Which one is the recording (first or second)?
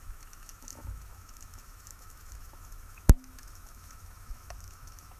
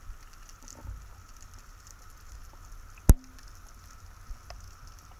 second